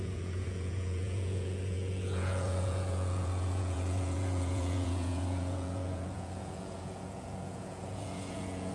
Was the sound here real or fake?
fake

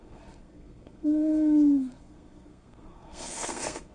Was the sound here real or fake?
fake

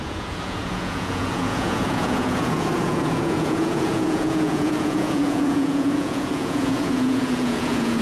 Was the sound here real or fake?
fake